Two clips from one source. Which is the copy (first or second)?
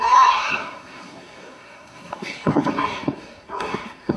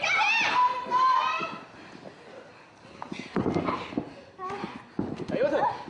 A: first